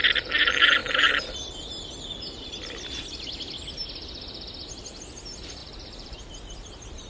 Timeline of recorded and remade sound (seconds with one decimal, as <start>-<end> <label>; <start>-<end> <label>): 0.0-5.6 recorded; 5.6-6.2 remade; 6.2-7.1 recorded